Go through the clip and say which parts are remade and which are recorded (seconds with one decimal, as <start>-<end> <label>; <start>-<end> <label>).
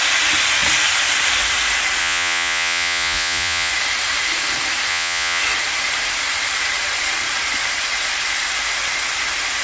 0.0-2.0 recorded; 2.0-3.7 remade; 3.7-4.9 recorded; 4.9-5.4 remade; 5.4-9.6 recorded